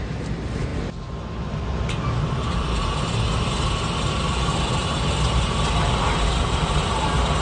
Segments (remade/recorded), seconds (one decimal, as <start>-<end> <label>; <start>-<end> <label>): 0.0-7.4 recorded